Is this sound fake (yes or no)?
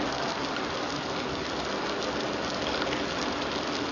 no